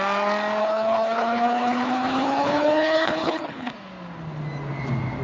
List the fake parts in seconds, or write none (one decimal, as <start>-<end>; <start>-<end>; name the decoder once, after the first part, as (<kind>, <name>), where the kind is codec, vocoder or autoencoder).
0.6-3.7 (codec, HILCodec)